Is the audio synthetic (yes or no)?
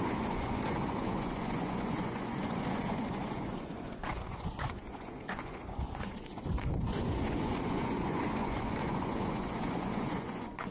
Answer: yes